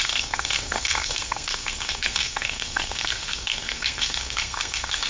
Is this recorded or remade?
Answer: remade